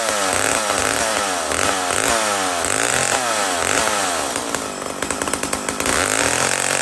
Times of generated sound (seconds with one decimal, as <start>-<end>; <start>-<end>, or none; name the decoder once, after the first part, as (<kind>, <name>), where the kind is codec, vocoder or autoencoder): none